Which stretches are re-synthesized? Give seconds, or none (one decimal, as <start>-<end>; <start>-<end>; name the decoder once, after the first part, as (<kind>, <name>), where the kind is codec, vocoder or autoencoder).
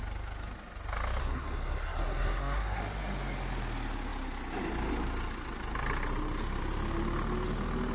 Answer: 1.2-2.8 (codec, SNAC)